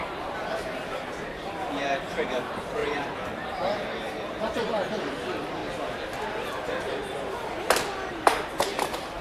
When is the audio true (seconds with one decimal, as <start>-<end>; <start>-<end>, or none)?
5.6-8.1